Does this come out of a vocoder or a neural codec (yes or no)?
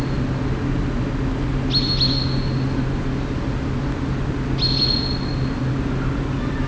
no